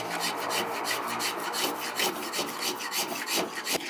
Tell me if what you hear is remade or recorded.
recorded